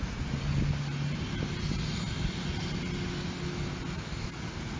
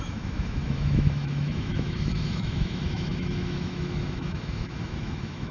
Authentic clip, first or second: first